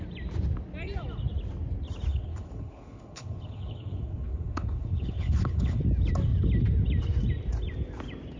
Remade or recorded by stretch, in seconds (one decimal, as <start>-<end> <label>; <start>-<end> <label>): 0.0-2.1 recorded; 2.1-5.8 remade; 5.8-8.4 recorded